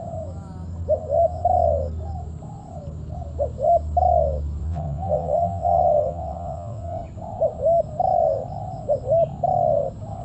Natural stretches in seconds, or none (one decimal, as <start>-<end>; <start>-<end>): 0.0-4.6; 7.0-10.2